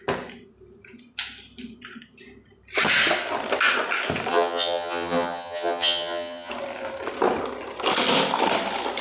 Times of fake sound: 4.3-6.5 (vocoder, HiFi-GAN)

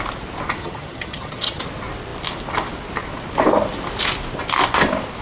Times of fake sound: 0.6-1.6 (vocoder, HiFi-GAN)

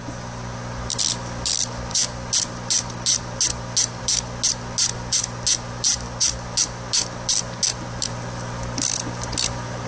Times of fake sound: none

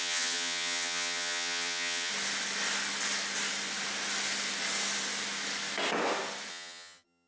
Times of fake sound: 0.0-2.1 (vocoder, HiFi-GAN); 6.5-7.3

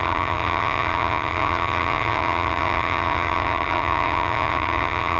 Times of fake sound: 0.0-5.2 (vocoder, HiFi-GAN)

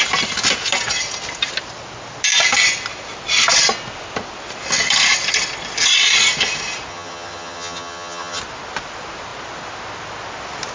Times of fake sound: 6.9-8.4 (vocoder, HiFi-GAN)

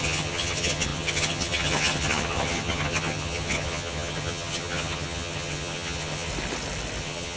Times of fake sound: 0.0-6.3 (vocoder, HiFi-GAN); 7.0-7.4

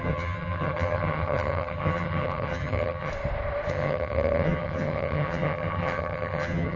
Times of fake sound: 0.0-3.1 (vocoder, HiFi-GAN); 3.7-6.8